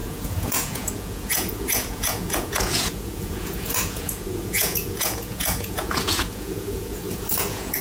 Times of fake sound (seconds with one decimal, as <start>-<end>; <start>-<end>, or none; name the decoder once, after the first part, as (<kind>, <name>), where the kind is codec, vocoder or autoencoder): 0.0-7.8 (vocoder, Vocos)